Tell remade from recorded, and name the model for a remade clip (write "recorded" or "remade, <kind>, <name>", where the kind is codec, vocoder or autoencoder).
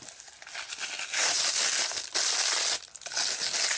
recorded